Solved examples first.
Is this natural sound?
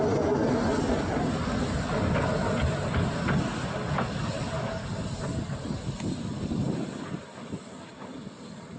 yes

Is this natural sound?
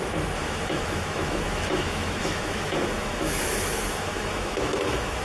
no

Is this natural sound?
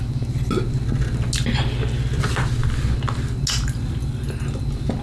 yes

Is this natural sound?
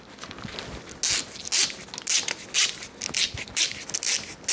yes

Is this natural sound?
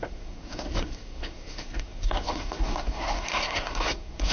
no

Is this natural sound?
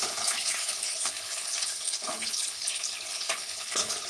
no